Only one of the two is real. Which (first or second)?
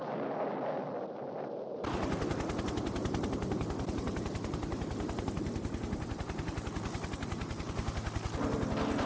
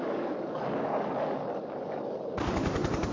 first